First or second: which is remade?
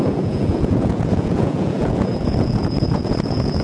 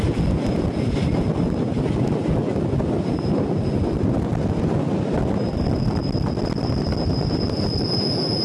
first